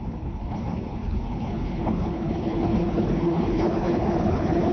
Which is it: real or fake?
fake